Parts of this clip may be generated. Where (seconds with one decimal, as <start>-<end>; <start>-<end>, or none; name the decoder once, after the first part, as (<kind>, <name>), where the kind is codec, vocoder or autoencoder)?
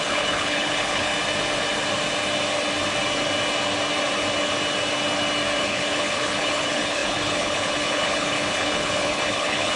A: 0.0-1.1 (codec, HILCodec); 5.6-9.8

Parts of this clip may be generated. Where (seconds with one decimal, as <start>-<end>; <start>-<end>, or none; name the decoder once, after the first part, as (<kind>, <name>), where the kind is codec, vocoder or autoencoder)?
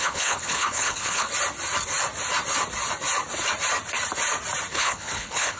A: 0.0-1.3 (codec, HILCodec); 4.7-5.6